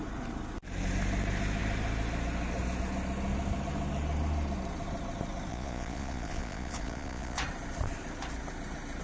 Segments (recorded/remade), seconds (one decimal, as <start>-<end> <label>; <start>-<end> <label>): 0.0-5.5 recorded; 5.5-7.4 remade; 7.4-9.0 recorded

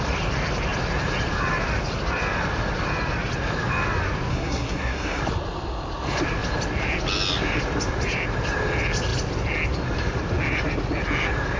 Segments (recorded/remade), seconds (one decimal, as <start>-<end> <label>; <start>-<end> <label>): 0.0-4.3 recorded; 4.3-5.2 remade; 5.2-11.6 recorded

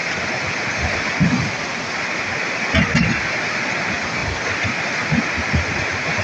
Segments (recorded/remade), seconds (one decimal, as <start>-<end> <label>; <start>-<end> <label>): 0.0-3.7 remade; 3.7-4.2 recorded; 4.2-5.0 remade; 5.0-6.2 recorded